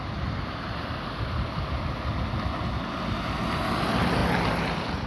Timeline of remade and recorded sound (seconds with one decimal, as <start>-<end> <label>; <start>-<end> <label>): 0.0-5.1 recorded